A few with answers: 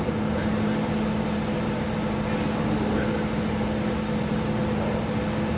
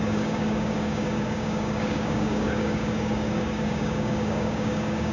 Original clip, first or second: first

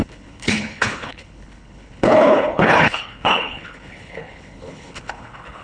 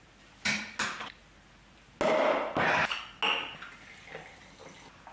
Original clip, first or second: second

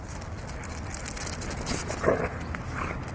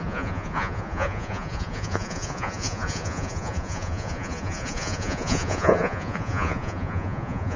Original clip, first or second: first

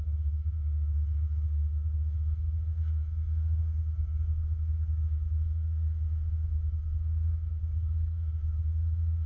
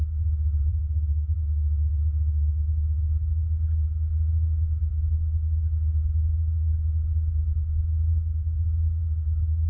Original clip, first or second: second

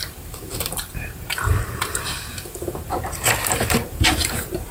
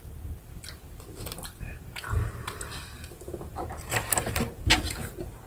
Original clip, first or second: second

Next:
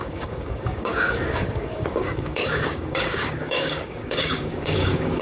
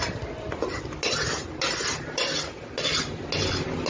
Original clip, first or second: second